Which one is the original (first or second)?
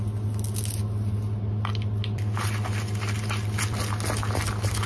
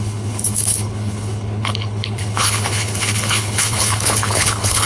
first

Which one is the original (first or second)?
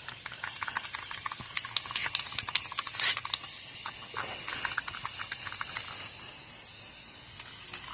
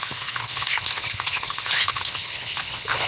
first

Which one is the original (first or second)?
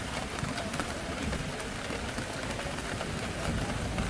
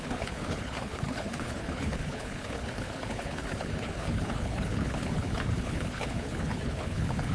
first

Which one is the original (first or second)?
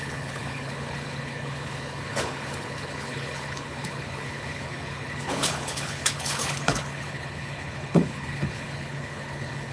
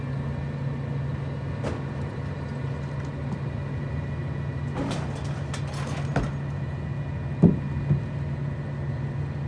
second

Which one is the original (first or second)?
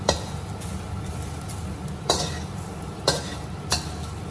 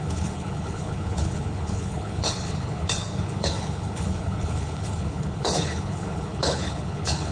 first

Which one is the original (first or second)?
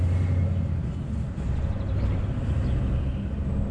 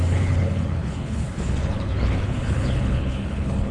first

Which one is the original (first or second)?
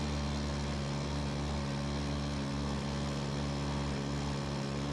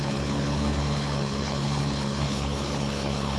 first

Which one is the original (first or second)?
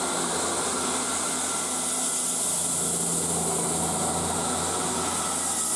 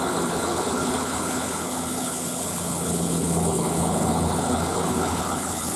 first